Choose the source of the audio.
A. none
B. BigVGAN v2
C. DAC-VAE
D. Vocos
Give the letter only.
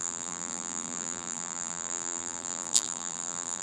B